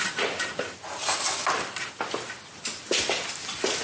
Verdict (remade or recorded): recorded